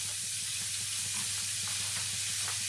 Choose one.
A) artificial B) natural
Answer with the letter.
B